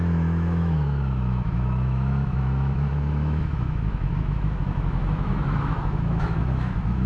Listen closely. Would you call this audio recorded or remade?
remade